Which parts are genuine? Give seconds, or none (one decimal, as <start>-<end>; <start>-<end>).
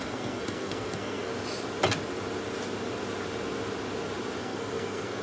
1.3-4.4